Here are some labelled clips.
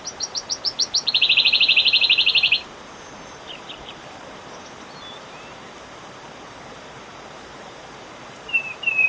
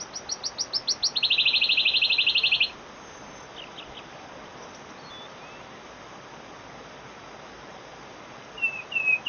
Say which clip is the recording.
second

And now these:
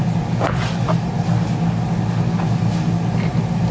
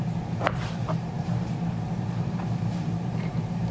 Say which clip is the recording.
first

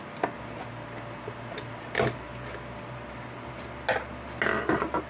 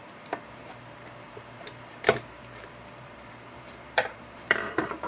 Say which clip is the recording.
first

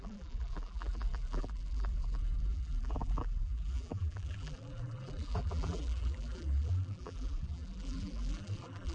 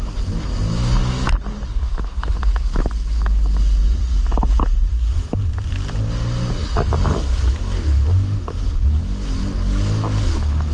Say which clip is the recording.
second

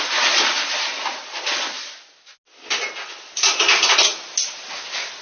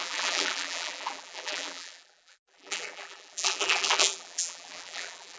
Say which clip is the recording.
first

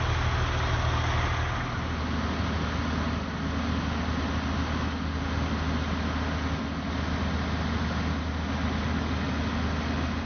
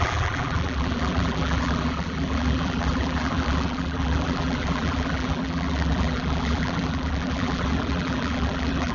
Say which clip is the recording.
first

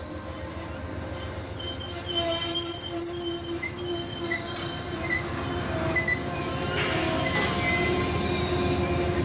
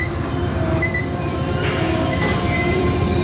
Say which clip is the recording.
first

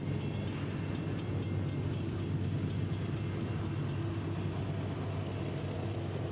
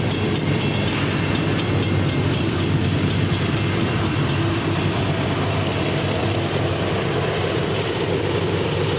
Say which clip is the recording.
first